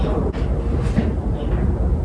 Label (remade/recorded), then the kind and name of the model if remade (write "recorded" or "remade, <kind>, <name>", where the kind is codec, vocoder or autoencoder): recorded